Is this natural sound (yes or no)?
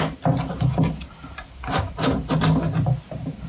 yes